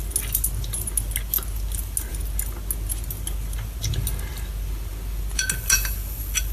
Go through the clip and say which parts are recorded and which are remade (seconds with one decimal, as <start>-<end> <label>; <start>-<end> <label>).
0.0-6.5 recorded

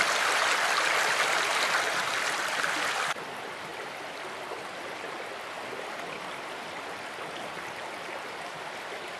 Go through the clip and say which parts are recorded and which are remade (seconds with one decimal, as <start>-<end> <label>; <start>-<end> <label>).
0.0-9.2 recorded

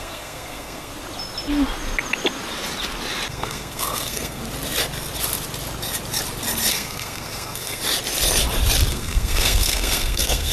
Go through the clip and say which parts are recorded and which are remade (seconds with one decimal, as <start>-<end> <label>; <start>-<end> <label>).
0.0-0.9 remade; 0.9-3.3 recorded; 3.3-4.4 remade; 4.4-6.7 recorded; 6.7-7.8 remade; 7.8-8.9 recorded; 8.9-10.5 remade

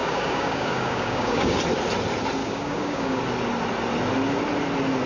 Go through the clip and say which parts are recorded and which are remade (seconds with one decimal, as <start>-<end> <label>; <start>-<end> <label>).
0.0-1.6 remade; 1.6-2.4 recorded; 2.4-3.2 remade; 3.2-5.1 recorded

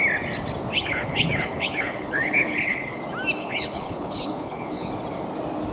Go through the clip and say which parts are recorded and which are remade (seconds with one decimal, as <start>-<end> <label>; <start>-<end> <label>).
0.0-0.7 recorded; 0.7-3.0 remade; 3.0-3.4 recorded; 3.4-4.9 remade; 4.9-5.7 recorded

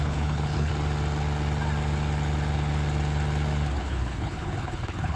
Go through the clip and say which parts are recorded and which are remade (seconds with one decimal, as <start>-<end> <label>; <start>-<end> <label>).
0.0-0.7 remade; 0.7-3.8 recorded; 3.8-5.2 remade